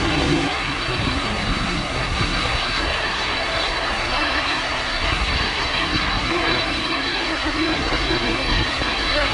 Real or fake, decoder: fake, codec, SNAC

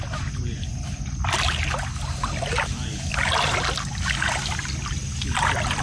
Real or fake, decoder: real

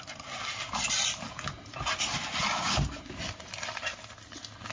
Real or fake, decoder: real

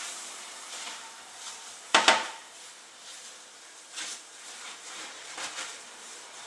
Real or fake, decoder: fake, vocoder, BigVGAN v2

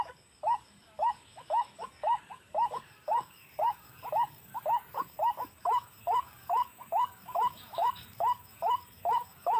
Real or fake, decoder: fake, codec, DAC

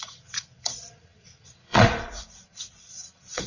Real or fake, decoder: fake, vocoder, Vocos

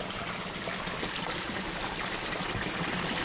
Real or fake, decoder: real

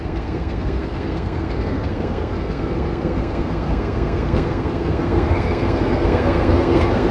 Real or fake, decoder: fake, codec, SNAC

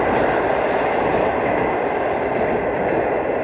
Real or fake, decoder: real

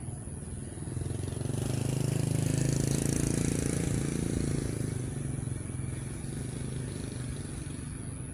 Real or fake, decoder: real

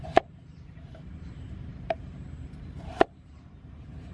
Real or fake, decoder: fake, vocoder, BigVGAN v2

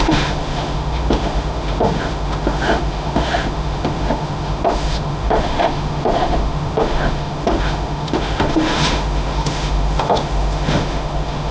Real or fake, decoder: fake, autoencoder, DAC-VAE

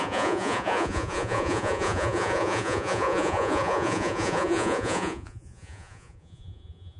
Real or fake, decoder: fake, vocoder, Vocos